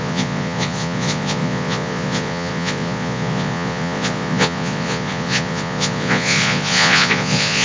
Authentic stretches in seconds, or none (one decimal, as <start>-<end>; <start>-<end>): none